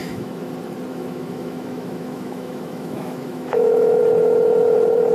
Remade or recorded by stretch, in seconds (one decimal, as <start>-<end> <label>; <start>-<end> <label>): 0.0-0.5 remade; 0.5-0.9 recorded; 0.9-4.0 remade; 4.0-5.1 recorded